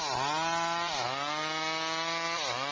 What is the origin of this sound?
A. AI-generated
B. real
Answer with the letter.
B